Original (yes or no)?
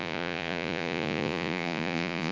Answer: no